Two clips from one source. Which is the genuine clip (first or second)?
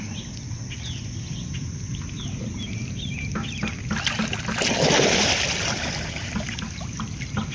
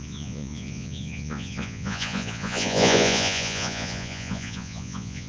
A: first